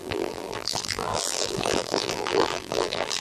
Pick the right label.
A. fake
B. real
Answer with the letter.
A